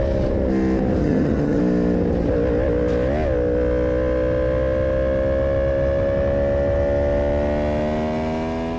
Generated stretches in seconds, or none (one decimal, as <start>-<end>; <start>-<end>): 1.0-1.6